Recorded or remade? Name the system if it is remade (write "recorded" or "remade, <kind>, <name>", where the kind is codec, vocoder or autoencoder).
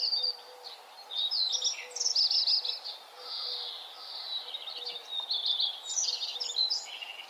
recorded